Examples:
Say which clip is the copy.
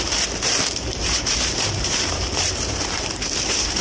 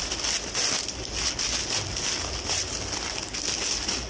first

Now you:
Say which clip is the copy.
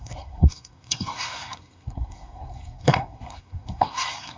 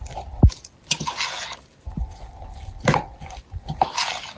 first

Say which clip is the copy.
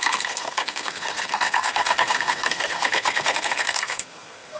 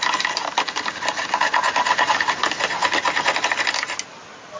first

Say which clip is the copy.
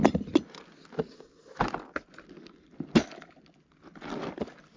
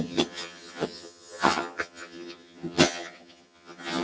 second